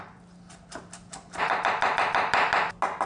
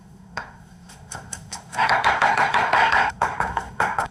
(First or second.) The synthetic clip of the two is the second